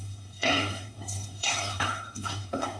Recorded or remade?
remade